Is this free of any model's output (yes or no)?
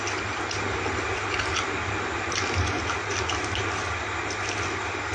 yes